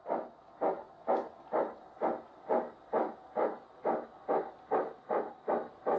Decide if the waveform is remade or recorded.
recorded